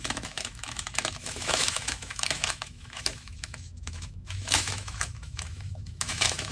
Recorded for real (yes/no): no